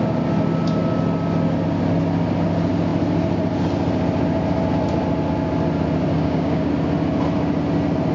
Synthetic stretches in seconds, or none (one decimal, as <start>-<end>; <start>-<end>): 6.1-6.7